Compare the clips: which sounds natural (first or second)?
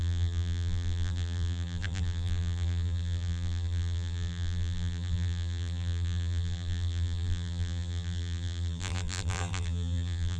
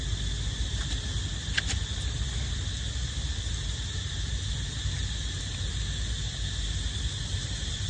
second